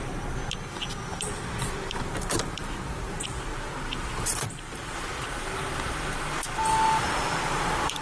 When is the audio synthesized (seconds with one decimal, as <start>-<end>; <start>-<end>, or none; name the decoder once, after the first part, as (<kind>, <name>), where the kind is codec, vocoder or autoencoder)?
0.0-0.4 (vocoder, BigVGAN v2); 2.0-5.1; 7.0-8.0